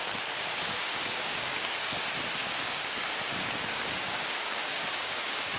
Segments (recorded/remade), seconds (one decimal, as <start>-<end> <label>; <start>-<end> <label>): 0.0-2.0 remade; 2.0-2.4 recorded; 2.4-5.6 remade